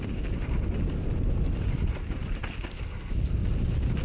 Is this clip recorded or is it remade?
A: recorded